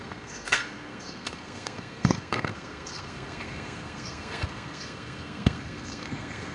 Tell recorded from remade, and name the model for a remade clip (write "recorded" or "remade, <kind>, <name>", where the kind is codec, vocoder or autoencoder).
remade, codec, SNAC